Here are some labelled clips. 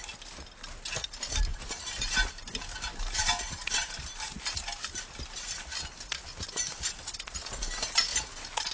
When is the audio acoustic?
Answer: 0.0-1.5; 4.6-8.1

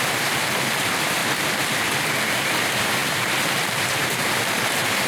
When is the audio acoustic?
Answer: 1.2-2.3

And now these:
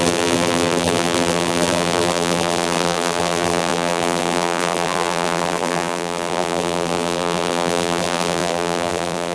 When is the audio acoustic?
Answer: none

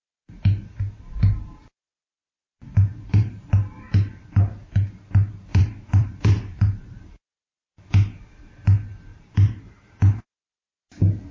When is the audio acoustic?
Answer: 0.0-2.9; 3.9-5.5; 7.2-9.1; 10.0-11.3